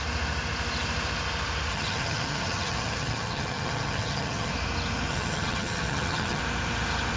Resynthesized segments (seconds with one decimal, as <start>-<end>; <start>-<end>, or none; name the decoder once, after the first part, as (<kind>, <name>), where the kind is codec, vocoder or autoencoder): 1.7-4.5 (vocoder, HiFi-GAN); 5.1-6.4